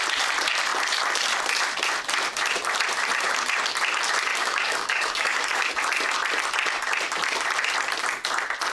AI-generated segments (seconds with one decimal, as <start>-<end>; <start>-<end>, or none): 4.3-5.7